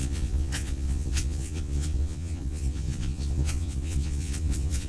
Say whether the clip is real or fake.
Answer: fake